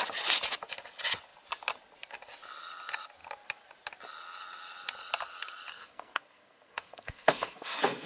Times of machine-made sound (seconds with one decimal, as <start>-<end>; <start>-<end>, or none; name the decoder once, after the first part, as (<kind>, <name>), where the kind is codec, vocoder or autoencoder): 5.7-8.1 (codec, SNAC)

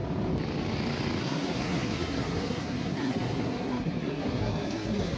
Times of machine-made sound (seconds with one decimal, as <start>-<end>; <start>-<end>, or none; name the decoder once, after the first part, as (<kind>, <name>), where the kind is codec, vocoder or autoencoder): 1.2-5.2 (codec, SNAC)

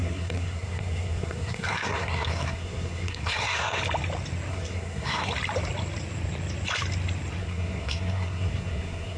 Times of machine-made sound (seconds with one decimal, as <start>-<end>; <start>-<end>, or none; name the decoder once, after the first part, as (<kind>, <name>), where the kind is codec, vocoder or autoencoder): 0.0-3.8 (codec, SNAC); 4.5-5.3; 7.4-9.2

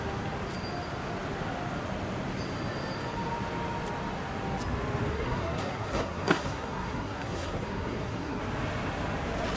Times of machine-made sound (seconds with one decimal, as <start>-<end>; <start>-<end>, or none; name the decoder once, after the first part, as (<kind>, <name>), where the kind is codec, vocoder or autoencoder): 5.1-8.4 (codec, SNAC)

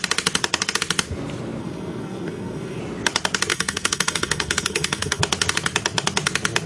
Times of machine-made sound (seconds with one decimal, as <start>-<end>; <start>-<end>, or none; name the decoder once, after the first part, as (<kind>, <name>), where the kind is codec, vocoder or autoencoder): 1.6-2.8 (codec, SNAC); 3.5-5.2

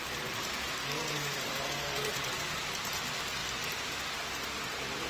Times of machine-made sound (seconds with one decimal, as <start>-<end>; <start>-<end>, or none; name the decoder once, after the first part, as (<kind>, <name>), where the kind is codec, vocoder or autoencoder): 0.8-2.1 (codec, SNAC)

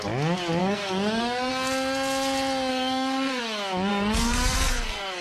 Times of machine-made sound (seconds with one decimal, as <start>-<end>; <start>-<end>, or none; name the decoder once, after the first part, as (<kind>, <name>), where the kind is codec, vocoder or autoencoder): 0.6-1.5 (codec, SNAC); 2.7-3.4; 3.9-5.2